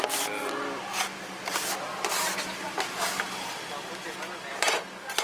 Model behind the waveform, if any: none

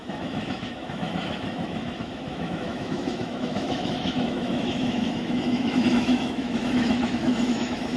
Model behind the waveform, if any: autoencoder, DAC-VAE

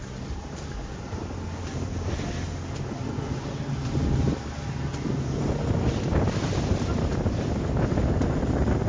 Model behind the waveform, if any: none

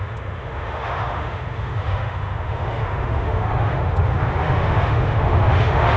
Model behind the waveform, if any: autoencoder, DAC-VAE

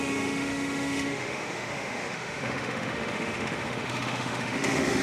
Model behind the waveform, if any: autoencoder, DAC-VAE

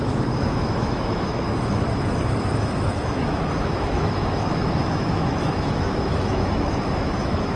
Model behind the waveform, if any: autoencoder, DAC-VAE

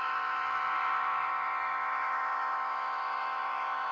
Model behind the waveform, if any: autoencoder, DAC-VAE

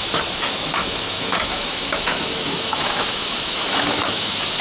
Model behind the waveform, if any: autoencoder, DAC-VAE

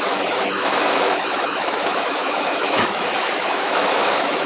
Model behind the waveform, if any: autoencoder, DAC-VAE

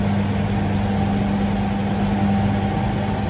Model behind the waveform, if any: none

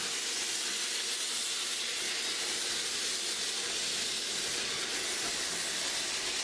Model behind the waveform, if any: none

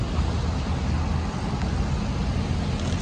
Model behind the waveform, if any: none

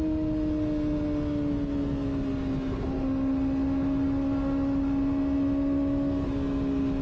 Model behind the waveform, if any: none